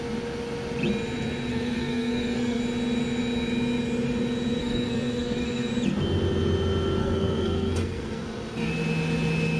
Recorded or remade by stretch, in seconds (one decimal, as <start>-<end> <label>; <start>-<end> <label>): 0.0-1.5 recorded; 1.5-2.6 remade; 2.6-4.6 recorded; 4.6-5.7 remade; 5.7-7.0 recorded; 7.0-8.7 remade; 8.7-9.6 recorded